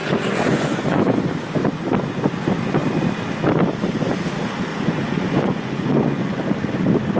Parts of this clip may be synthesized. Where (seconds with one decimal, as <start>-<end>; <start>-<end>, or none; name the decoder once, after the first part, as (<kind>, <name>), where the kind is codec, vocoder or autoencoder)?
0.0-1.2 (vocoder, Vocos); 4.7-6.4